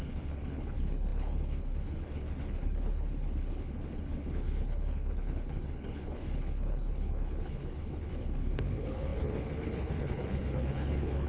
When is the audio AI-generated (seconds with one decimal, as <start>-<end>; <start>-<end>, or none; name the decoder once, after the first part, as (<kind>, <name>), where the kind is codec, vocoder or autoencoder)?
0.0-11.3 (codec, HILCodec)